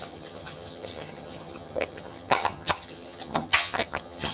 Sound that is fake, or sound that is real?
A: fake